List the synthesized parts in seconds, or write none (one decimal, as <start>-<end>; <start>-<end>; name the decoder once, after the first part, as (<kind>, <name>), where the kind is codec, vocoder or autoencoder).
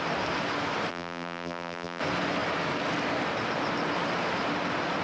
0.9-2.0 (vocoder, BigVGAN v2)